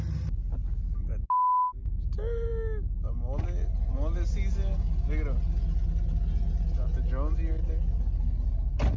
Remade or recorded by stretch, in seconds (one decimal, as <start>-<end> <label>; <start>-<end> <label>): 0.0-9.0 recorded